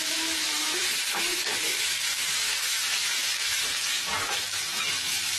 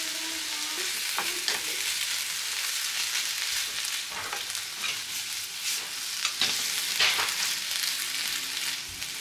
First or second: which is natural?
second